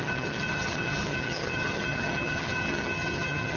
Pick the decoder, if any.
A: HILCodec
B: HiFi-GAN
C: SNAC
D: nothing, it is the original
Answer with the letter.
B